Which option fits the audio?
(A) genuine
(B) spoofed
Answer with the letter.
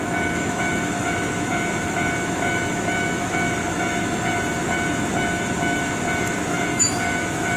B